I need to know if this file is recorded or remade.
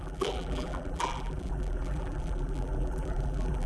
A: remade